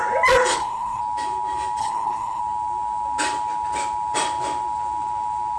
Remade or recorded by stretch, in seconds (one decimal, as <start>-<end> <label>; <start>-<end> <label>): 0.0-0.5 recorded; 0.5-1.0 remade; 1.0-1.8 recorded; 1.8-2.4 remade; 2.4-5.6 recorded